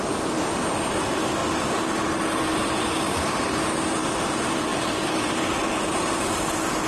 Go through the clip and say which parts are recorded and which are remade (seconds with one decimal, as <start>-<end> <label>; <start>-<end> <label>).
0.0-6.9 recorded